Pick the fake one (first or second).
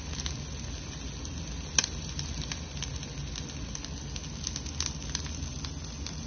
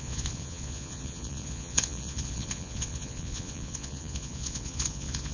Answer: second